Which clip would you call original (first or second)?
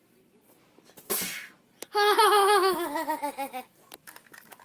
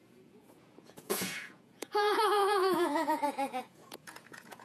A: first